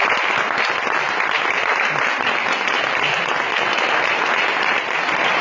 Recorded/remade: recorded